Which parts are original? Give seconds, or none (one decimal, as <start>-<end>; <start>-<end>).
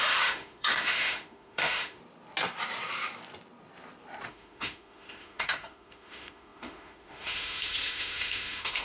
2.0-4.3